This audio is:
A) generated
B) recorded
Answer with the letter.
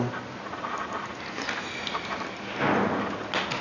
B